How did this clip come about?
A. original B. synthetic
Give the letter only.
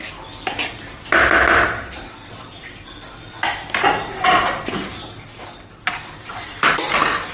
A